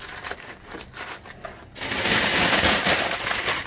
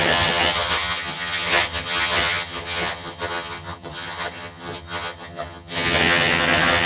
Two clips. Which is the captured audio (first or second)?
first